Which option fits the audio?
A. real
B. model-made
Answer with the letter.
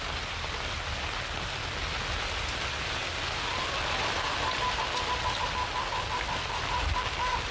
A